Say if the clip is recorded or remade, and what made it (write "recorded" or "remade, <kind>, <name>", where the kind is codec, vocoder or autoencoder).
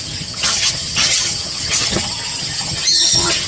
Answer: remade, vocoder, HiFi-GAN